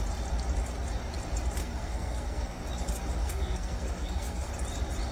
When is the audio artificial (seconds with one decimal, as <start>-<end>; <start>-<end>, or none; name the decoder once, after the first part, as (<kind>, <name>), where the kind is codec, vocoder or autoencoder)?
1.6-2.6 (codec, SNAC); 3.2-4.5

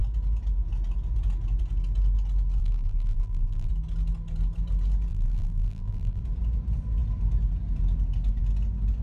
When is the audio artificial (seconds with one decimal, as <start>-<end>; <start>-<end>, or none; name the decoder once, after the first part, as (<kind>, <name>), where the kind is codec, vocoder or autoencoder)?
2.6-3.7 (vocoder, BigVGAN v2); 5.1-6.2

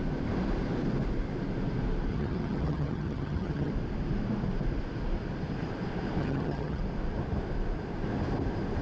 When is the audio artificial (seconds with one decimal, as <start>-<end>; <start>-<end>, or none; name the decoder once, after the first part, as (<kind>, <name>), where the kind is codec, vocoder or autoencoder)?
2.1-3.7 (vocoder, HiFi-GAN); 6.2-6.8

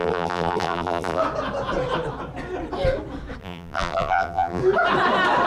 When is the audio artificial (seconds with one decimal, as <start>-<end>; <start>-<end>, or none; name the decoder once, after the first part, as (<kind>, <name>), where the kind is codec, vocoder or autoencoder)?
0.0-1.2 (vocoder, BigVGAN v2); 3.4-4.6

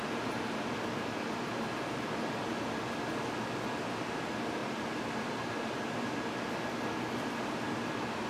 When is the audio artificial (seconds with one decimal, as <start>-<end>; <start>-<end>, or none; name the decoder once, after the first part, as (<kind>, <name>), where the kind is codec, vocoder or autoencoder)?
none

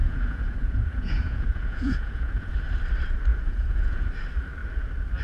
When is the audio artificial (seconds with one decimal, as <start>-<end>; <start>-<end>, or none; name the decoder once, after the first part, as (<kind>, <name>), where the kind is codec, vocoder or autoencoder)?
0.0-2.5 (vocoder, Vocos); 3.3-4.1

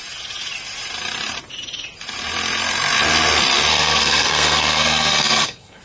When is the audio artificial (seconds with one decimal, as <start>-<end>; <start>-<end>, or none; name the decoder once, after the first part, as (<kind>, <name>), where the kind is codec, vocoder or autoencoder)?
3.7-5.8 (codec, SNAC)

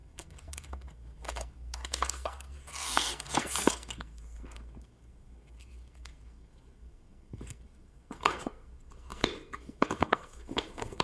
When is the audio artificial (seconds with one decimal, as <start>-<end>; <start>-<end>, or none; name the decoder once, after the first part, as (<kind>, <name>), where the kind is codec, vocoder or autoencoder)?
0.0-11.0 (codec, SNAC)